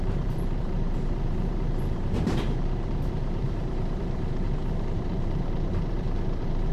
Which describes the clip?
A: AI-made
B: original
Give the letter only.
A